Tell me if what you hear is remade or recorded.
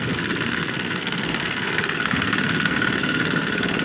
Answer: remade